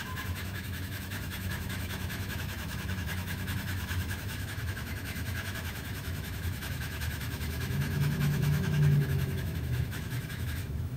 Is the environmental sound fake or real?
fake